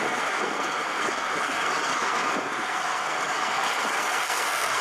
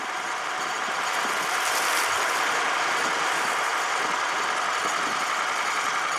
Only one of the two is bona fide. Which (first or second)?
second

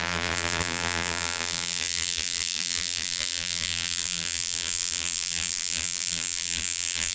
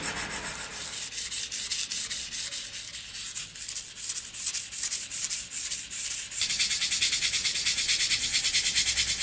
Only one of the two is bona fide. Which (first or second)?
second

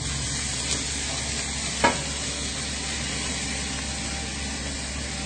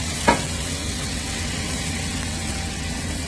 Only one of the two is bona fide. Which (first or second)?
first